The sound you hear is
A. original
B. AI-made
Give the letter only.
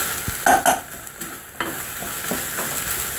A